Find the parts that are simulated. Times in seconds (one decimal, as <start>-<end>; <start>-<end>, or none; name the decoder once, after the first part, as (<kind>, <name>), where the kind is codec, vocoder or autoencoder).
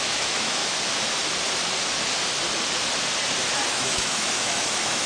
0.0-0.6 (autoencoder, DAC-VAE); 3.7-5.1